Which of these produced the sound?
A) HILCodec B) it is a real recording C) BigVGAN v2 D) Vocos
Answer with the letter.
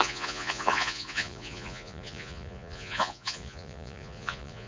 D